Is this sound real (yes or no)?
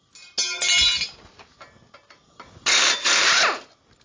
yes